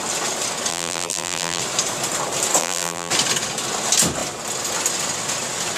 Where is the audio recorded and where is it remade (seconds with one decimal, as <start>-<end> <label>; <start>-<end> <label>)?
0.0-0.7 recorded; 0.7-1.6 remade; 1.6-2.6 recorded; 2.6-3.1 remade; 3.1-5.8 recorded